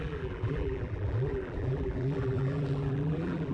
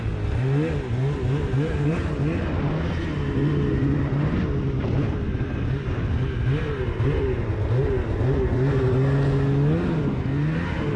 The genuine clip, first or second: second